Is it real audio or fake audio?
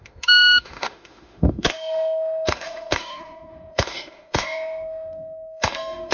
fake